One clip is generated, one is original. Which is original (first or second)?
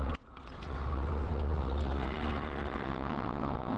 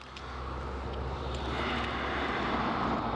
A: second